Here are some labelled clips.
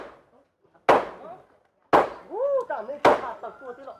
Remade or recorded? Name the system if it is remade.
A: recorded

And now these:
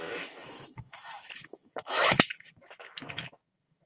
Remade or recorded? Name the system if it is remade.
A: remade, autoencoder, DAC-VAE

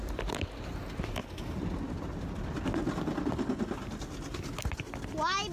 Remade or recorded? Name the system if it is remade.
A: recorded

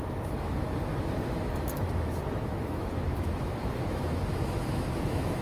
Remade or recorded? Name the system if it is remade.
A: remade, autoencoder, DAC-VAE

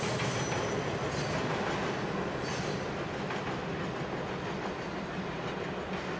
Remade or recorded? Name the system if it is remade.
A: recorded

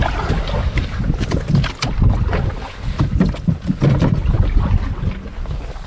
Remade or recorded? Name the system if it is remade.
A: recorded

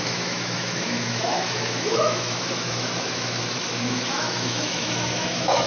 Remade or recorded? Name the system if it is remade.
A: remade, autoencoder, DAC-VAE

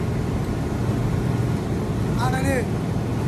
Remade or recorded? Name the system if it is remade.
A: recorded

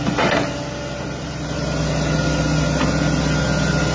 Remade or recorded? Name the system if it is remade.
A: recorded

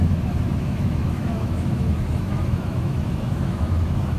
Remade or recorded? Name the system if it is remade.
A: remade, autoencoder, DAC-VAE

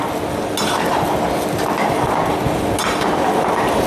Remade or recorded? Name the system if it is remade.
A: recorded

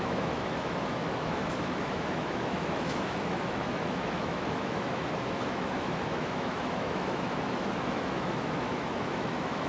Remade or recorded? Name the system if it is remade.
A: remade, autoencoder, DAC-VAE